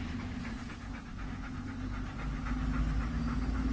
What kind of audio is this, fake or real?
real